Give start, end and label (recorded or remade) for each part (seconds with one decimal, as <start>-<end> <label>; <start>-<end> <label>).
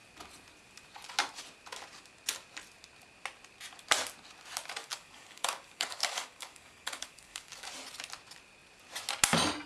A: 0.0-4.8 recorded; 4.8-7.7 remade; 7.7-9.7 recorded